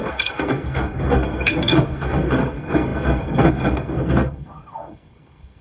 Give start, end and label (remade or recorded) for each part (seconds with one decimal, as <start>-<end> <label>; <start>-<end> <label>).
0.0-5.6 remade